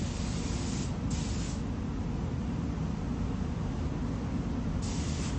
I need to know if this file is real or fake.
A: real